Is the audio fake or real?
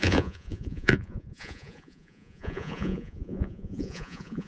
fake